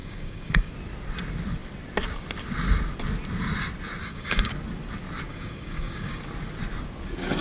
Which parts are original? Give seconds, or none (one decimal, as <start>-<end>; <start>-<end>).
0.7-4.0; 4.5-5.3; 6.2-7.4